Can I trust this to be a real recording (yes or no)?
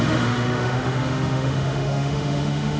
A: no